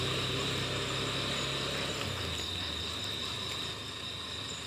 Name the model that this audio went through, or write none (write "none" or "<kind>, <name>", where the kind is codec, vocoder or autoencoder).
none